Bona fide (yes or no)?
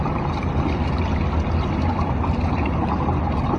yes